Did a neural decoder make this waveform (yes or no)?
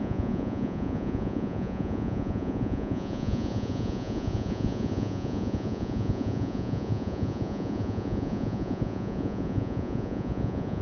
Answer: yes